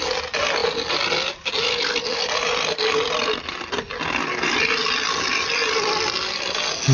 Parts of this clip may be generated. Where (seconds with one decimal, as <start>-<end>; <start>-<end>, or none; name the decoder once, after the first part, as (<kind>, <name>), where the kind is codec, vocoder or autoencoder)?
none